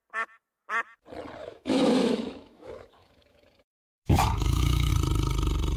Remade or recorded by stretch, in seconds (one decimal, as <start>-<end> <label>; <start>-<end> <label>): 0.0-1.4 recorded; 1.4-4.9 remade; 4.9-5.8 recorded